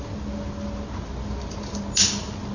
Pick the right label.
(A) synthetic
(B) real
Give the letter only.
B